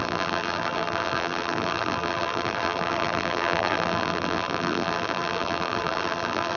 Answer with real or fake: fake